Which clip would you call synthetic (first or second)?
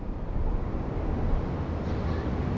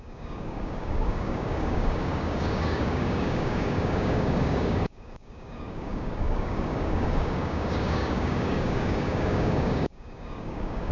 second